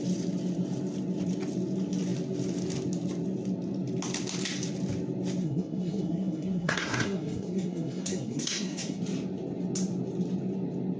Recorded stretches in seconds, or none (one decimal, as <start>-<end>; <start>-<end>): 0.0-5.4; 9.0-11.0